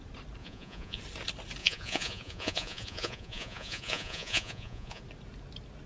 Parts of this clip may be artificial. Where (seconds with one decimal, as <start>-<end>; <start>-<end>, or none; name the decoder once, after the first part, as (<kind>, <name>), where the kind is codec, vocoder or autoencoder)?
0.4-1.0 (vocoder, Vocos); 1.6-5.0